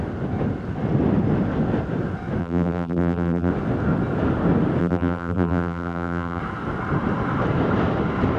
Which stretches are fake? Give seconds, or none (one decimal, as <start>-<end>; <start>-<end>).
2.4-3.5; 4.8-6.4